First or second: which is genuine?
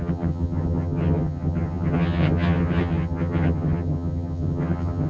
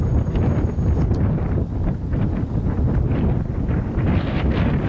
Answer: second